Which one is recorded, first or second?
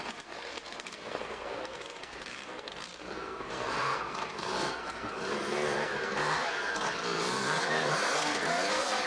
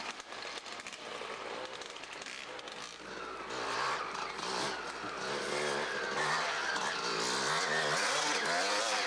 second